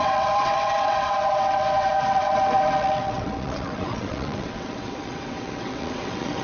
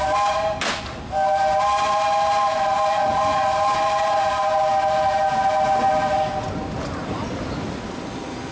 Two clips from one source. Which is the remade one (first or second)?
first